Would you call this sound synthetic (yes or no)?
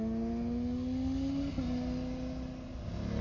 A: no